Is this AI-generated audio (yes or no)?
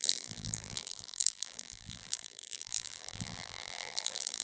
yes